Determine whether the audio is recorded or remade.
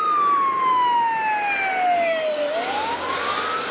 recorded